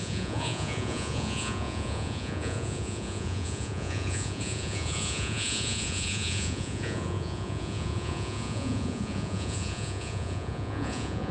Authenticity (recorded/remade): remade